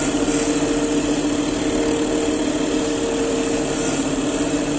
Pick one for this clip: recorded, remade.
recorded